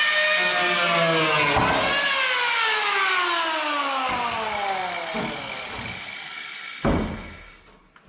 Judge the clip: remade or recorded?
recorded